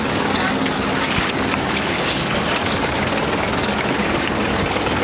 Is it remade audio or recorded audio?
remade